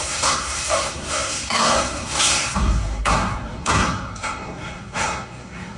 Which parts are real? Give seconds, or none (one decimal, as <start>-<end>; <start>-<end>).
none